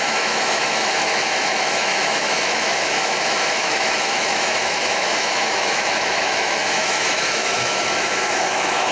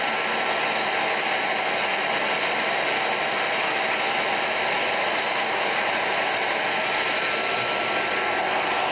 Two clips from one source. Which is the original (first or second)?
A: second